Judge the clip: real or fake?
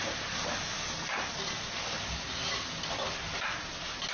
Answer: real